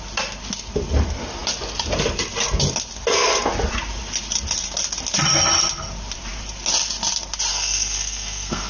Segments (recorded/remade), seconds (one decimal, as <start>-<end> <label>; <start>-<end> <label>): 0.0-7.5 recorded; 7.5-8.7 remade